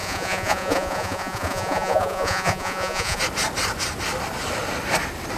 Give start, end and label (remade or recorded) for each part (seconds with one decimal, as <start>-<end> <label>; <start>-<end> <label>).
0.0-3.2 remade; 3.2-5.4 recorded